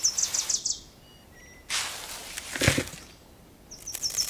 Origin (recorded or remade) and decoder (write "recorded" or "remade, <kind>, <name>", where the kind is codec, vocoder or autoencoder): recorded